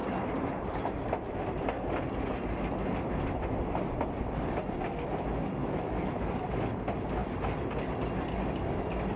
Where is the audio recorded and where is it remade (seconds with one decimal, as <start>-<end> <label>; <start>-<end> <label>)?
0.0-5.6 recorded; 5.6-6.3 remade; 6.3-9.2 recorded